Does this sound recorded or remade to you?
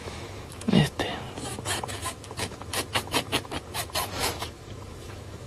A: remade